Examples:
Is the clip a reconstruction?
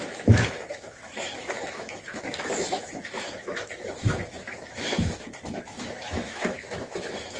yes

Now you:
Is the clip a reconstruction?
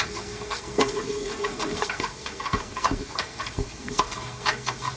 yes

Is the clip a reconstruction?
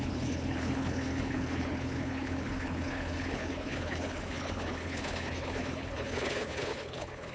yes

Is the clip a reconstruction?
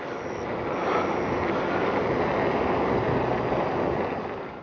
no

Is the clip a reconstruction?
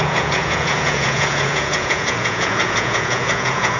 yes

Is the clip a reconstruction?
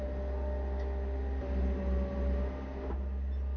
no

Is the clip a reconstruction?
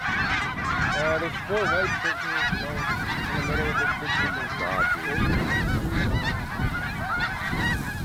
no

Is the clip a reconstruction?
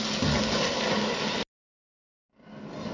no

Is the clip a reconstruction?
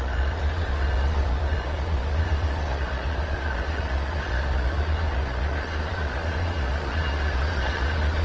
yes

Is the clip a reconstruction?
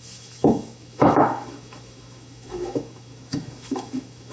yes